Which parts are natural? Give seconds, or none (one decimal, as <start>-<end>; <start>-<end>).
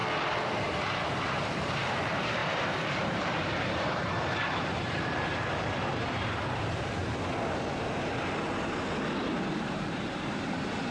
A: 0.0-0.5; 7.0-9.2